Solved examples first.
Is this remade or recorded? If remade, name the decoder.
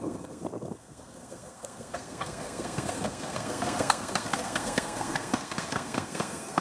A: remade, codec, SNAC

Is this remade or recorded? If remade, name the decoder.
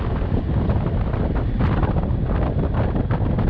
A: recorded